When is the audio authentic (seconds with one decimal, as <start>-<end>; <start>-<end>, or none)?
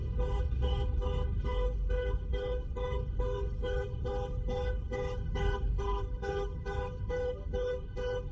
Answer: none